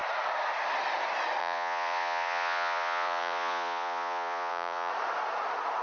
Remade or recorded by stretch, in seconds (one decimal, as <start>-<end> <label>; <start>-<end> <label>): 0.0-1.4 recorded; 1.4-4.9 remade; 4.9-5.8 recorded

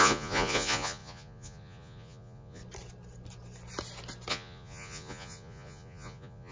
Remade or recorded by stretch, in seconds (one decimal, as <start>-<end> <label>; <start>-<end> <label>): 0.0-2.6 remade; 2.6-4.3 recorded; 4.3-6.5 remade

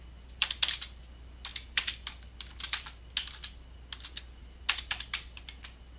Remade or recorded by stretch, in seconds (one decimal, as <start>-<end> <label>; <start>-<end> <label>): 0.0-6.0 recorded